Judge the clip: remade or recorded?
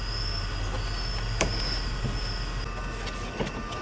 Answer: recorded